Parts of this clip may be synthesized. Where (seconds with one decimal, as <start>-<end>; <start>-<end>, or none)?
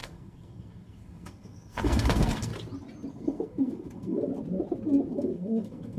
0.0-2.5; 3.1-4.3; 5.1-6.0